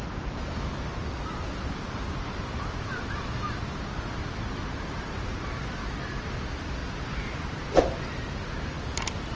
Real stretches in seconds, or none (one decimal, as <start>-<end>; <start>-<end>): 0.0-9.4